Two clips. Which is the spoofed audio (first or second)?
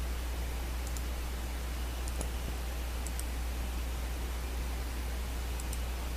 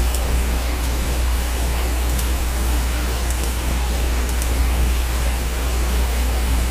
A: second